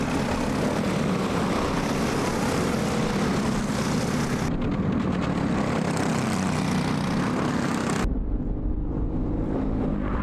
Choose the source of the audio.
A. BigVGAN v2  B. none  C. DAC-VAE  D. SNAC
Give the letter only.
B